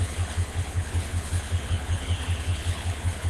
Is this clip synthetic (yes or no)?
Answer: yes